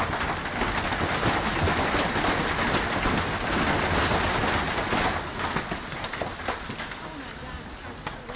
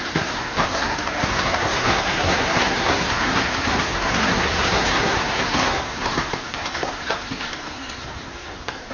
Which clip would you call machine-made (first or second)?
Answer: second